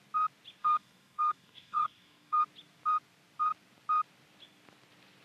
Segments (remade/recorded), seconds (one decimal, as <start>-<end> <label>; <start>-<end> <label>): 0.0-0.6 recorded; 0.6-2.4 remade; 2.4-5.2 recorded